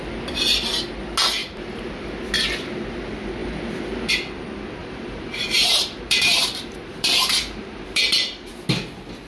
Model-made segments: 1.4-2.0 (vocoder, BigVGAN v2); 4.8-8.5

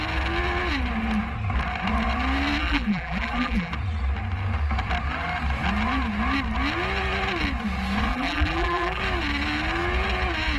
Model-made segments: 2.6-3.7 (vocoder, BigVGAN v2); 8.1-9.0

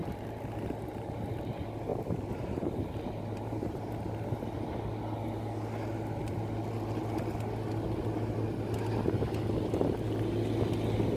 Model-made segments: 1.9-3.9 (vocoder, BigVGAN v2)

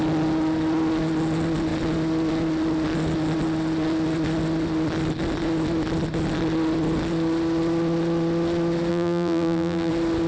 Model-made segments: 8.9-9.9 (vocoder, BigVGAN v2)

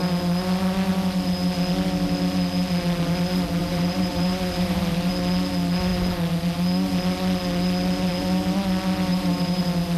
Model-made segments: 3.6-5.1 (vocoder, BigVGAN v2); 9.1-9.6